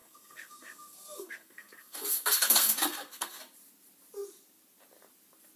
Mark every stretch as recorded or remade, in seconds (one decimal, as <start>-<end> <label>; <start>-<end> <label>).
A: 0.0-3.4 remade; 3.4-5.6 recorded